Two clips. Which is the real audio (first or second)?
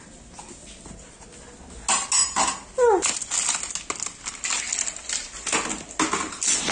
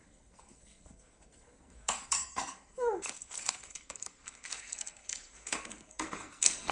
first